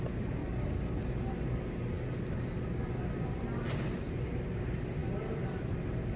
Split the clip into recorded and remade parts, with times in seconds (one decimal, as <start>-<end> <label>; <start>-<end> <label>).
0.0-0.4 remade; 0.4-4.1 recorded; 4.1-6.2 remade